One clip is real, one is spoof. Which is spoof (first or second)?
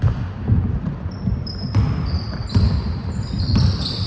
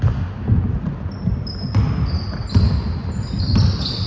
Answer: first